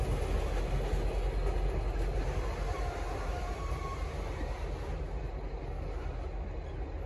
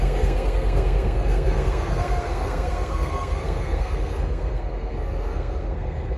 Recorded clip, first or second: first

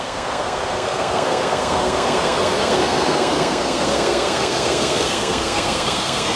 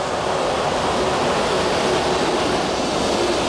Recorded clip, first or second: second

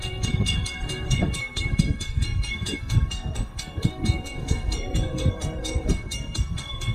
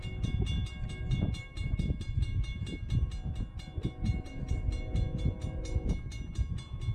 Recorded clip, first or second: second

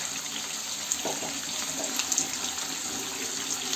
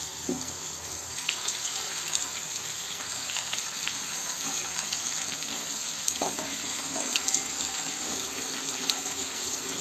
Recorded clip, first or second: first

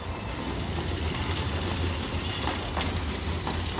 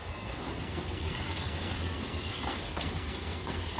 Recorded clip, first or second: first